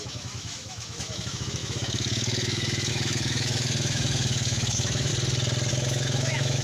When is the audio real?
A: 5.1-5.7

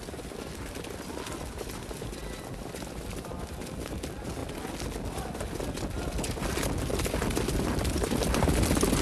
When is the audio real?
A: 0.0-9.0

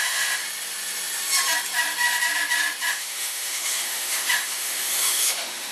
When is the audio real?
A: 0.4-2.9

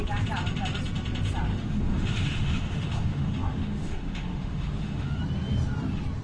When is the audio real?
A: 0.0-1.5; 5.2-6.2

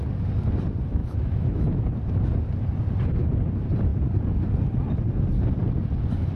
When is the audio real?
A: 0.0-1.0; 1.8-6.4

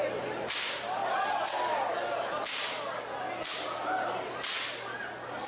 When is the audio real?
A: 0.0-5.5

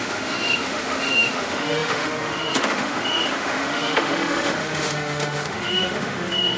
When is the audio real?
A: none

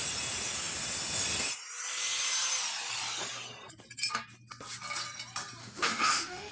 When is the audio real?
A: 0.0-5.6